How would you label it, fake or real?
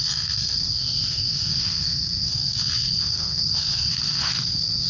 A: fake